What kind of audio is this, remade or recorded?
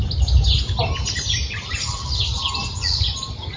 recorded